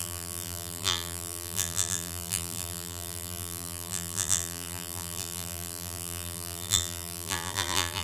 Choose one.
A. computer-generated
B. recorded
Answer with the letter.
A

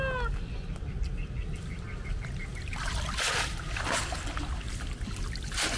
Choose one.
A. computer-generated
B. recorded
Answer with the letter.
B